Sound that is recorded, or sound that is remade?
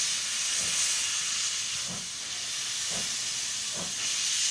recorded